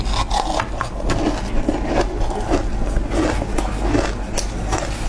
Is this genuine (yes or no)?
yes